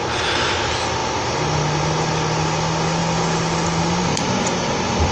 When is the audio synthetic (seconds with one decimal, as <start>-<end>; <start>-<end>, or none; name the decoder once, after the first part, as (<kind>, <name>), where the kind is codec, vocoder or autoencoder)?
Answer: none